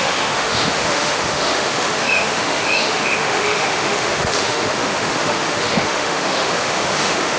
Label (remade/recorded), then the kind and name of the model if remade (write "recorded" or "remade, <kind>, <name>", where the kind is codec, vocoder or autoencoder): remade, autoencoder, DAC-VAE